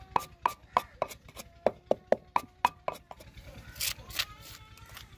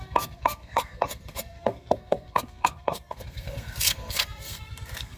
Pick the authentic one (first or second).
first